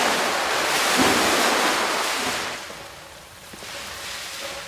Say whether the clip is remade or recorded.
recorded